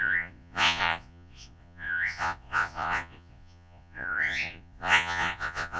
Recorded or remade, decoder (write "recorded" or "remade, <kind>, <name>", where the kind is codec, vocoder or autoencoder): remade, vocoder, Vocos